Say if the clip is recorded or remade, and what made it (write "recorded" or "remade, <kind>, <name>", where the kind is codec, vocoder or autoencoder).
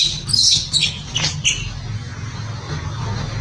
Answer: recorded